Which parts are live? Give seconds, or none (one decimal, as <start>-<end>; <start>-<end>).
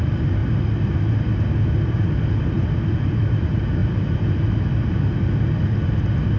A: 0.0-6.4